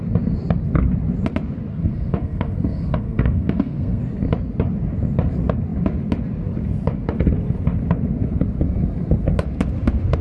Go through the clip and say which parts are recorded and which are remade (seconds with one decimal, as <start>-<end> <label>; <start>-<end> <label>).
0.0-1.7 recorded; 1.7-4.0 remade; 4.0-10.2 recorded